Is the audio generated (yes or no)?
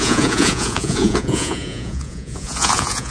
yes